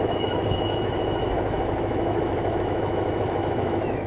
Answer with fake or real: fake